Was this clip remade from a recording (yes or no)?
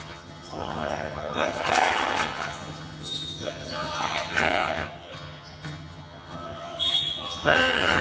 yes